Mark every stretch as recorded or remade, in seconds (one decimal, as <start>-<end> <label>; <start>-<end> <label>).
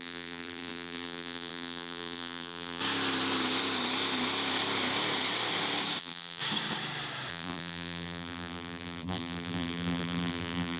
0.0-2.8 remade; 2.8-6.0 recorded; 6.0-6.4 remade; 6.4-7.3 recorded; 7.3-10.8 remade